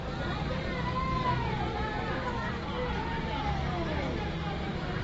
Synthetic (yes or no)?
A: no